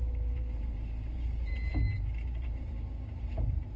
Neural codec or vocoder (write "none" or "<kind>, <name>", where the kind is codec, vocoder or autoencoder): vocoder, BigVGAN v2